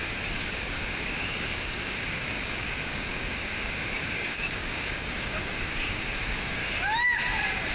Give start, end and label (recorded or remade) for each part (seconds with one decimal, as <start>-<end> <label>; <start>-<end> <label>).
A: 0.0-6.6 remade; 6.6-7.7 recorded